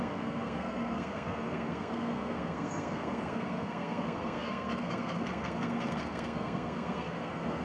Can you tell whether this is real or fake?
fake